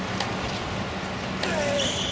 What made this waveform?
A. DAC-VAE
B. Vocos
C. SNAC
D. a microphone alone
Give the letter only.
D